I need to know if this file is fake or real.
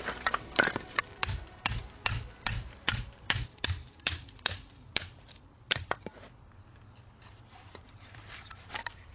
fake